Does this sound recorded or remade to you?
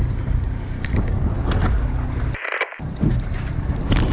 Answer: recorded